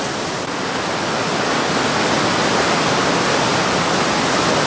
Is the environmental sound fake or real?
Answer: real